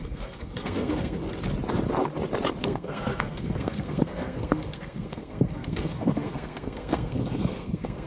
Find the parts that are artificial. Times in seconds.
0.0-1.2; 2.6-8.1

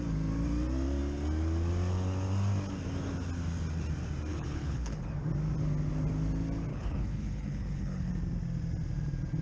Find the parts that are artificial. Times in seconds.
4.3-5.1; 6.7-8.1

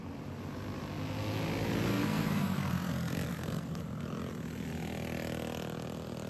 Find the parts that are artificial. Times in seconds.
1.9-2.7; 3.3-3.8

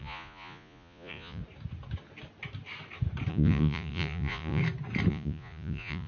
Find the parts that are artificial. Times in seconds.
0.0-1.4; 3.3-4.6; 5.1-6.1

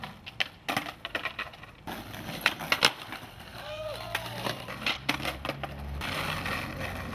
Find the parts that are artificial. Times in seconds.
3.5-5.1

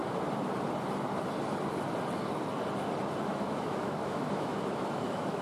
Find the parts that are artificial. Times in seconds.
3.2-5.4

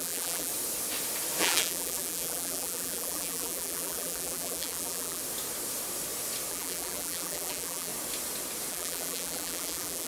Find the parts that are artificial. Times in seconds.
0.0-0.5; 1.4-5.2; 6.5-7.9; 8.7-10.1

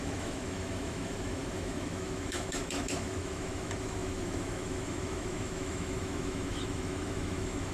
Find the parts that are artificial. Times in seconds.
0.0-7.7